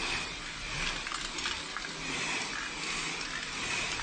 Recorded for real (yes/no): yes